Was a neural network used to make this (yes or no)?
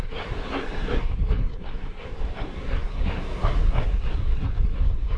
yes